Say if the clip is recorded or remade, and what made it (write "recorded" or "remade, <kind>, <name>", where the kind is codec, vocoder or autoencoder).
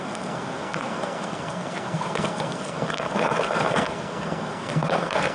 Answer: remade, codec, SNAC